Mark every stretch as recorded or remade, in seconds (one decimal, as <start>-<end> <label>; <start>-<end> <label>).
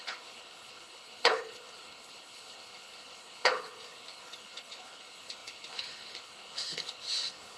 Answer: 0.0-7.6 remade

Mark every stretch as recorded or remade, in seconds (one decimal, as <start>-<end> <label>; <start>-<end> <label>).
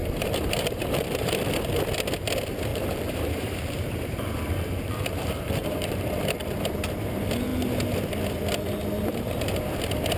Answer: 0.0-1.4 remade; 1.4-2.7 recorded; 2.7-6.2 remade; 6.2-10.2 recorded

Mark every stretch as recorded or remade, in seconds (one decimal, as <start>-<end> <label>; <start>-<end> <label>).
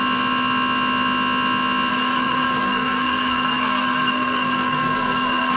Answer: 0.0-1.9 recorded; 1.9-5.6 remade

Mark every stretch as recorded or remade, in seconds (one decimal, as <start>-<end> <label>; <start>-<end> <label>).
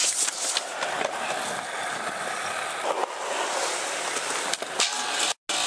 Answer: 0.0-3.0 recorded; 3.0-3.7 remade; 3.7-5.7 recorded